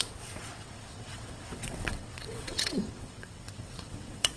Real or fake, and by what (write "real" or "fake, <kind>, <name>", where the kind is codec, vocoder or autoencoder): fake, vocoder, WaveNeXt